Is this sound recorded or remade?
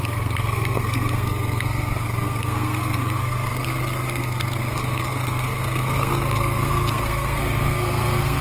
remade